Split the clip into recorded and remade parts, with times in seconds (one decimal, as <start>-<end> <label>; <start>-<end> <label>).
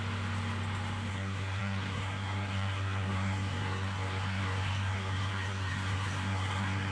0.0-1.1 recorded; 1.1-6.9 remade